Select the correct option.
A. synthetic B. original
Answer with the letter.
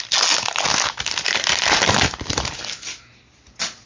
B